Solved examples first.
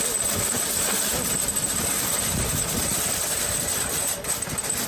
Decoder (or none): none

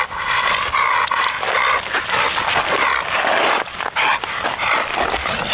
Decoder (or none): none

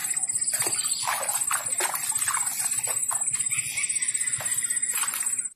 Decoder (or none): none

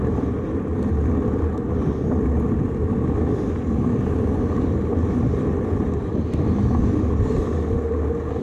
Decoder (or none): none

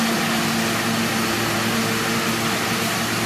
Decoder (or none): none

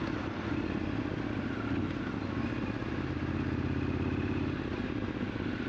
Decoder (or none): none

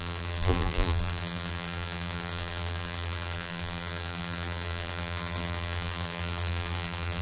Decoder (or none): vocoder, BigVGAN v2